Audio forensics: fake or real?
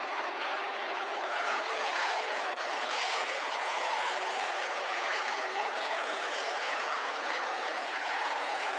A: fake